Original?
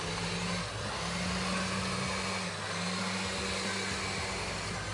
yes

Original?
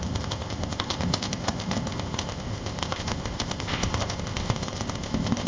no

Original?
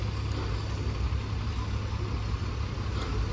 yes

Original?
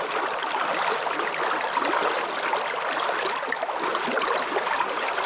yes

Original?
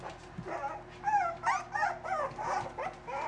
yes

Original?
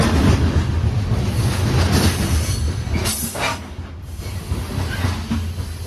yes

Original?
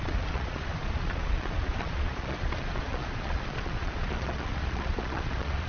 no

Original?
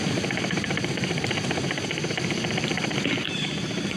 no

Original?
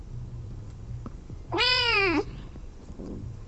no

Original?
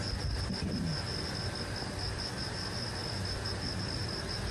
yes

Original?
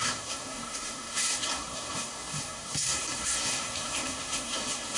no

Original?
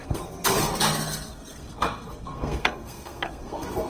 no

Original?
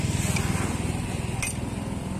yes